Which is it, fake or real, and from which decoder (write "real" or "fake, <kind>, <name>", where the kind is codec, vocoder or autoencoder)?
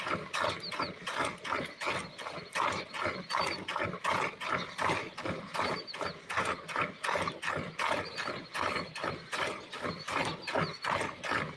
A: real